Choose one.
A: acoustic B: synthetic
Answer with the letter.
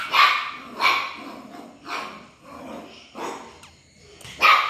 A